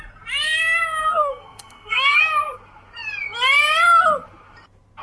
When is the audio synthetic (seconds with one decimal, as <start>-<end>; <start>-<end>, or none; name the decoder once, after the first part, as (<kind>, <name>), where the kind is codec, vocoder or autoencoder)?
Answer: 1.0-2.2 (codec, SNAC)